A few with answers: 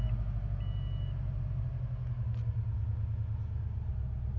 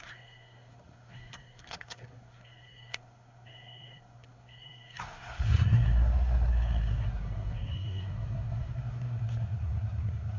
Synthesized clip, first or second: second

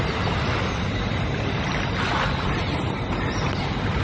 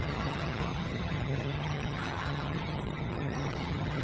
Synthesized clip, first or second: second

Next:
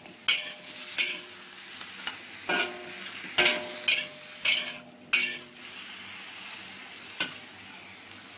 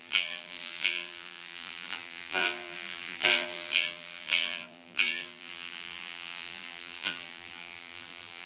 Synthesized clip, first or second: second